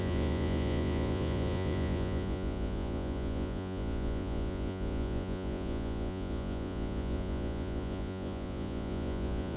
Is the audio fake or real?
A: fake